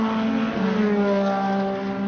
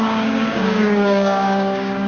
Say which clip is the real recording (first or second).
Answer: first